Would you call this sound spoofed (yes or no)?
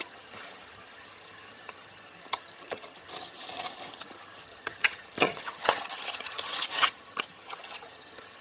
yes